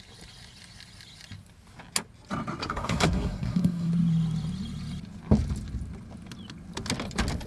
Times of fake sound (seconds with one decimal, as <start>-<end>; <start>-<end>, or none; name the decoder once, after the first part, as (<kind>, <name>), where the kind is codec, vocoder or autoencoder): 2.6-3.9 (codec, SNAC)